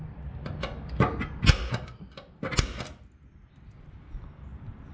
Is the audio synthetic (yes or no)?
no